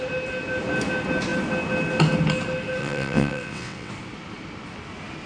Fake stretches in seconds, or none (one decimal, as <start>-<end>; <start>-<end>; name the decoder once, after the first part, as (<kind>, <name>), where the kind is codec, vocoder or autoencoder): 2.8-3.9 (vocoder, WaveNeXt)

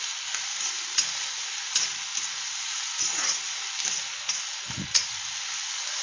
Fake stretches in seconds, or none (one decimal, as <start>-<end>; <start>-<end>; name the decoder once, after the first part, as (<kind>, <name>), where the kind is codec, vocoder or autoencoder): none

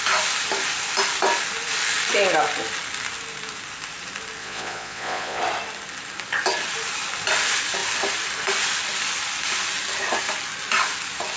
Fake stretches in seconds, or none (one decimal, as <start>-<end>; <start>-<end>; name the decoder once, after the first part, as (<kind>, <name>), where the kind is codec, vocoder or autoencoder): 4.4-5.4 (vocoder, Vocos)